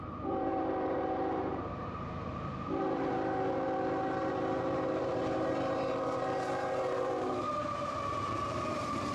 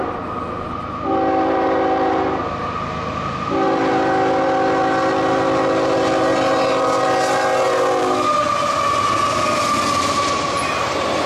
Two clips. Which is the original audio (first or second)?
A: second